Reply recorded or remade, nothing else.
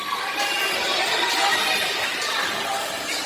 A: remade